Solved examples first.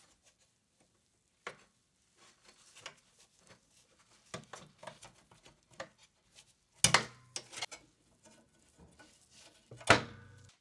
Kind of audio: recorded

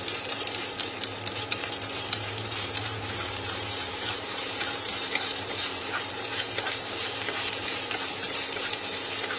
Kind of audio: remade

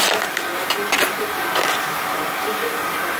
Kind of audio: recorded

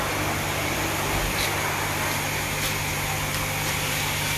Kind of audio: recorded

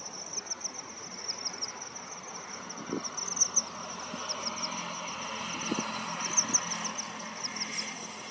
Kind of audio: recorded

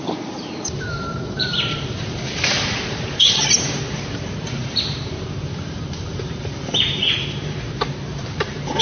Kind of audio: remade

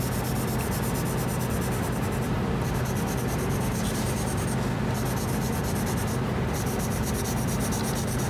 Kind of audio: recorded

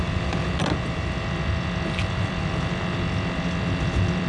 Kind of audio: remade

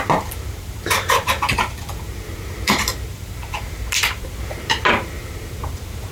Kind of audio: remade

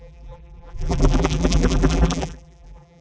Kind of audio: remade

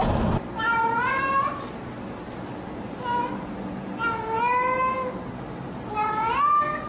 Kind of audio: recorded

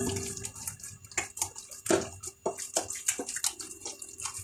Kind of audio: recorded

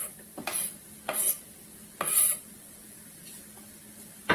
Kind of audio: recorded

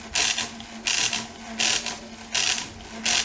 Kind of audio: recorded